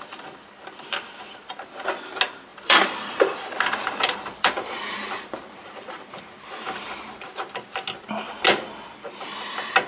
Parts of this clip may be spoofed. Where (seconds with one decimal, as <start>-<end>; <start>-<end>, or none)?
2.5-7.7

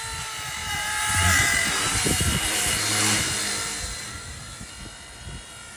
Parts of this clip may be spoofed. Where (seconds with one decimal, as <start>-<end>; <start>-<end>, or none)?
0.6-2.2

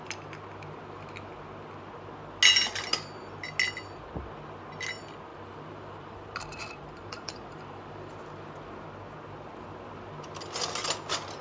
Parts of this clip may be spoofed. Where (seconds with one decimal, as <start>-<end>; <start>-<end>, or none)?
5.3-8.1